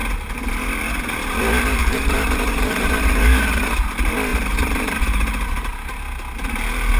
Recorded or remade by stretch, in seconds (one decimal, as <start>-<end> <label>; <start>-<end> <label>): 0.0-1.8 recorded; 1.8-3.7 remade; 3.7-4.3 recorded; 4.3-6.0 remade; 6.0-7.0 recorded